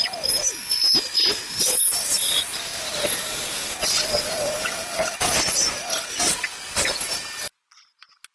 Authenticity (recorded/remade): recorded